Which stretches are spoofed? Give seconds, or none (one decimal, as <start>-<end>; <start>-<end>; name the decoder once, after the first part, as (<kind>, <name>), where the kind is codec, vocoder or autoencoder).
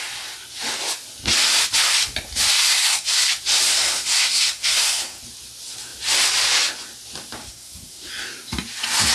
2.7-3.3 (codec, SNAC); 3.7-5.2; 7.4-8.1